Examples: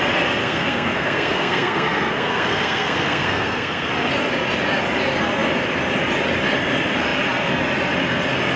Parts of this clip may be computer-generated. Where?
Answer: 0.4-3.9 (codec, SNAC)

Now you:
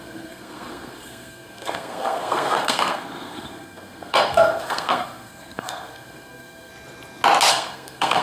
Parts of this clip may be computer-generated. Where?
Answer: 0.0-6.7 (codec, SNAC); 7.5-8.2